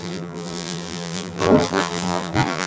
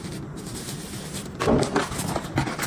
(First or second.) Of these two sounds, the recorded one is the second